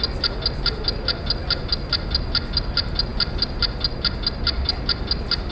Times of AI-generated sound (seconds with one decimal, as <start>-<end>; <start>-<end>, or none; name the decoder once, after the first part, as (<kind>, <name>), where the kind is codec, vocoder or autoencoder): none